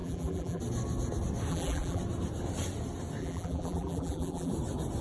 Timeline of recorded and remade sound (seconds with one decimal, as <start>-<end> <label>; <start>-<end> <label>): 0.0-0.6 remade; 0.6-1.5 recorded; 1.5-2.0 remade; 2.0-3.2 recorded; 3.2-4.5 remade; 4.5-5.0 recorded